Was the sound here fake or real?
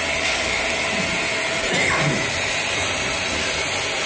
fake